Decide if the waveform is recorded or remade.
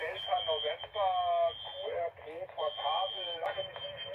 recorded